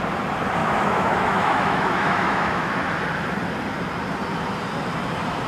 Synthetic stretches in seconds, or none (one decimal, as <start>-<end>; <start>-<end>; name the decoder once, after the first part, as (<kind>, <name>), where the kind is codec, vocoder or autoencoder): 0.6-2.7 (autoencoder, DAC-VAE)